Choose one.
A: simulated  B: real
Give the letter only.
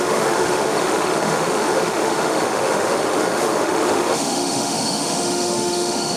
A